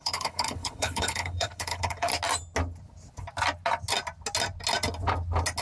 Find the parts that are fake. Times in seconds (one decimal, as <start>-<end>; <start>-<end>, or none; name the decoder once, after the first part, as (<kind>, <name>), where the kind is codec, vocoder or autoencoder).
0.0-2.1 (codec, HILCodec)